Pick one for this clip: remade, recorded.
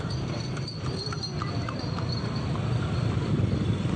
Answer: remade